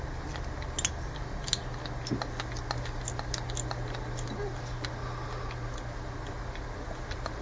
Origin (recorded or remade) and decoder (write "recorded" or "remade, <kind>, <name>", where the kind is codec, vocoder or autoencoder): recorded